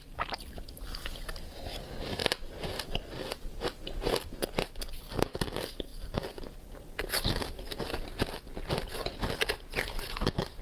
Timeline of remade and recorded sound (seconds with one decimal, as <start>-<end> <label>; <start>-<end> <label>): 0.0-10.6 recorded